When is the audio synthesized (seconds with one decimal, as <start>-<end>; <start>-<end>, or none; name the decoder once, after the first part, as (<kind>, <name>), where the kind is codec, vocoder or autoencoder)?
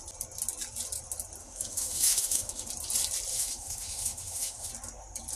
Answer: 1.4-2.7 (autoencoder, DAC-VAE); 3.3-4.7